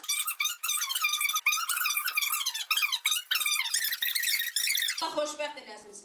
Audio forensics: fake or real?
real